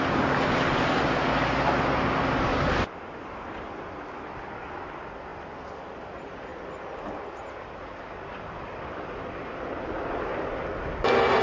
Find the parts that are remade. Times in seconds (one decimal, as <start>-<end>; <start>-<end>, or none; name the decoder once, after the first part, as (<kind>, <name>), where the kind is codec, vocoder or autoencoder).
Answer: none